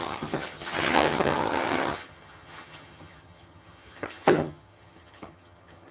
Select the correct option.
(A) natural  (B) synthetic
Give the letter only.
B